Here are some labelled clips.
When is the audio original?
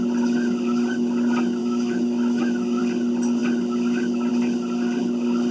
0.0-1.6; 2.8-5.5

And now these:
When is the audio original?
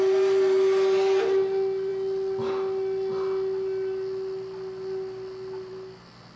0.0-6.4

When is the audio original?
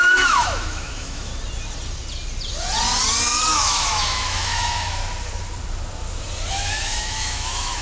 1.3-3.5; 5.0-6.5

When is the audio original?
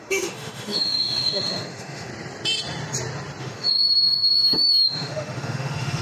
2.1-3.4